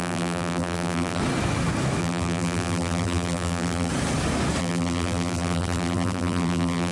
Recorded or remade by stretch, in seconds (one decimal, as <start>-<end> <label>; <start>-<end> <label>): 0.0-1.2 remade; 1.2-2.0 recorded; 2.0-3.9 remade; 3.9-4.6 recorded; 4.6-6.9 remade